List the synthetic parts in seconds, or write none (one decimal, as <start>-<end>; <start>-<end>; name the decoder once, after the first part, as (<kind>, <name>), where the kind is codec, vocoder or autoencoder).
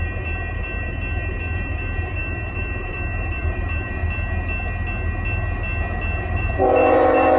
0.0-4.0 (vocoder, BigVGAN v2); 6.2-6.7